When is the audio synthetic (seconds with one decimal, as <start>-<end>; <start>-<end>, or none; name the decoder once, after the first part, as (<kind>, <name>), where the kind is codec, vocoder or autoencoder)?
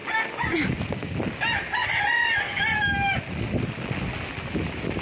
none